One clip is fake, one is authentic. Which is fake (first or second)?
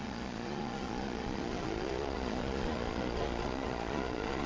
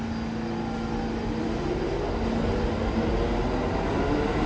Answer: first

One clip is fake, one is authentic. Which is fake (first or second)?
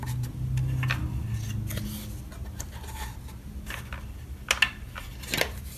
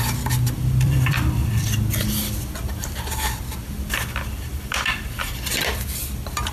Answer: second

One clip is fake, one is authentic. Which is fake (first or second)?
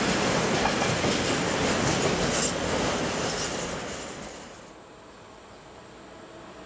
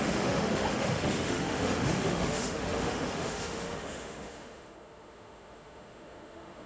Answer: second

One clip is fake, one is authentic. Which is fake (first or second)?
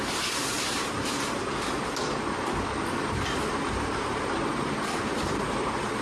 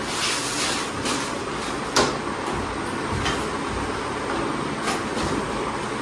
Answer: first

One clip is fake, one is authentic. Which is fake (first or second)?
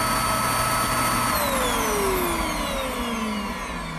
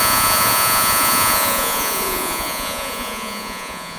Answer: second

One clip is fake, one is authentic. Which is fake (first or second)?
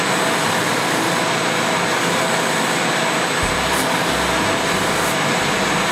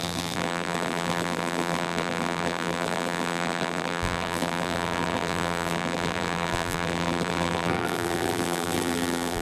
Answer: second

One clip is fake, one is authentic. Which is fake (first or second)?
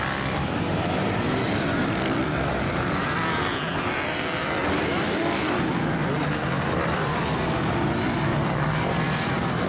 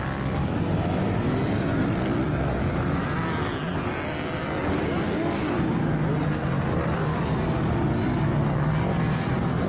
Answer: first